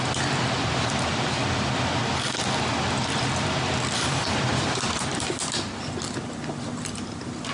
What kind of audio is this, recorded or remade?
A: remade